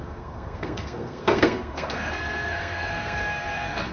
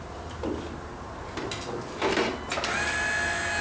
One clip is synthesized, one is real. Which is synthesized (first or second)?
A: first